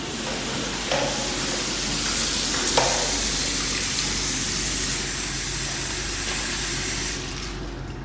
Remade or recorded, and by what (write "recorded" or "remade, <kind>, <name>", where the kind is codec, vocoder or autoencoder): recorded